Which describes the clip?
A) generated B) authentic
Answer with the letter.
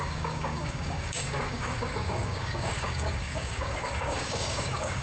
A